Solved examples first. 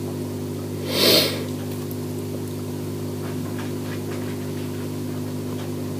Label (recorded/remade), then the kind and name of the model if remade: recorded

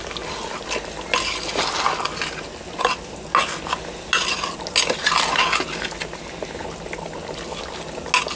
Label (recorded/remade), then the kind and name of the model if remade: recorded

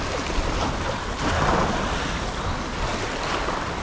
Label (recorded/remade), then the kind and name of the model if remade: recorded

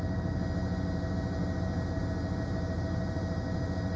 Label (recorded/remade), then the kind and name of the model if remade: recorded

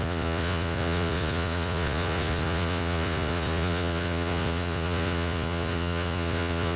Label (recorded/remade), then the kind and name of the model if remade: remade, vocoder, Vocos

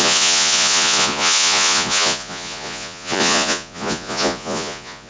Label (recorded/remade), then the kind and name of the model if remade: remade, vocoder, Vocos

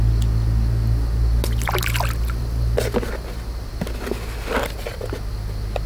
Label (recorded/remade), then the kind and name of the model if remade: recorded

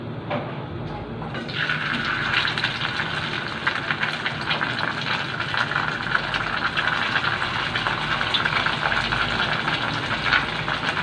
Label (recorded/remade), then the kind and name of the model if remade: recorded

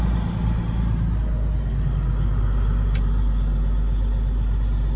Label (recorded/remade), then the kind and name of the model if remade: recorded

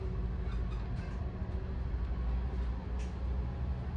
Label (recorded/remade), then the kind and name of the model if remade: recorded